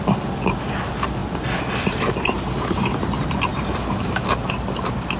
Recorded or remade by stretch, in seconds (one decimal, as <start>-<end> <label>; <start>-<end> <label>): 0.0-5.2 recorded

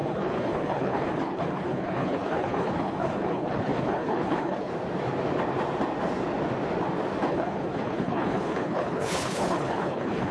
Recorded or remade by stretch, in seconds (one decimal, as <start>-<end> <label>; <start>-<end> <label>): 0.0-4.7 remade; 4.7-7.3 recorded; 7.3-10.3 remade